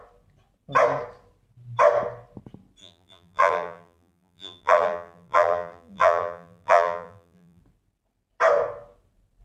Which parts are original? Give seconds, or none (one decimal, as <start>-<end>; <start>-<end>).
0.0-2.8; 7.6-9.4